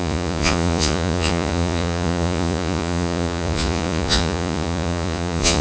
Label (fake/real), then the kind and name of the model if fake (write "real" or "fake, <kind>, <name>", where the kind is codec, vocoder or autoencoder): fake, vocoder, Vocos